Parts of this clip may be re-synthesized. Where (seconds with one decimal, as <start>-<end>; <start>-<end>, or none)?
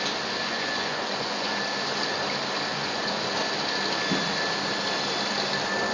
0.5-1.6; 2.7-3.3